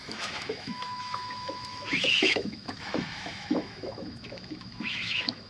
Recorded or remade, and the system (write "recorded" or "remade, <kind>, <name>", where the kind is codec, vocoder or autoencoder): remade, autoencoder, DAC-VAE